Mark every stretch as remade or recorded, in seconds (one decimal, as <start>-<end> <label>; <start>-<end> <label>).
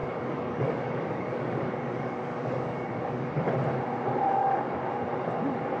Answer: 0.0-3.5 remade; 3.5-4.4 recorded; 4.4-4.9 remade; 4.9-5.8 recorded